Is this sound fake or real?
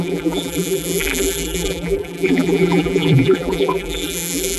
fake